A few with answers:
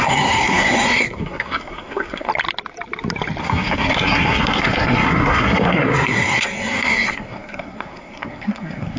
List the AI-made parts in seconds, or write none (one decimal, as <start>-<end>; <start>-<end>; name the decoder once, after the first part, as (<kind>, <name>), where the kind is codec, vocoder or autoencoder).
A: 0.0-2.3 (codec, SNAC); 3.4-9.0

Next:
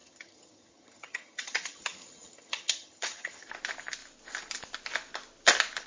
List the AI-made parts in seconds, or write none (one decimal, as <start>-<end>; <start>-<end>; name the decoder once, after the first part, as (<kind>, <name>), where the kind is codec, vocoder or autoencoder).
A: 0.0-3.5 (vocoder, HiFi-GAN)

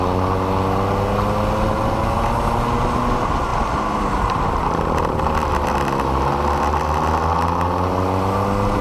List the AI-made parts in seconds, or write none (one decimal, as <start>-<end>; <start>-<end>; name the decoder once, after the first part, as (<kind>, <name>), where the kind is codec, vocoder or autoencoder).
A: none

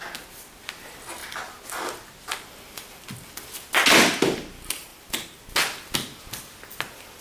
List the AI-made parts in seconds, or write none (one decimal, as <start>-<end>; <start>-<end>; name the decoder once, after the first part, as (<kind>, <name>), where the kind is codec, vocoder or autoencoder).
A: none